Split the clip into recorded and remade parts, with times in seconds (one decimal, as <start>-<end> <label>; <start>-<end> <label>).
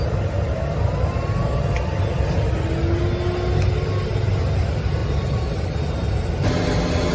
0.0-5.0 recorded; 5.0-6.3 remade; 6.3-7.1 recorded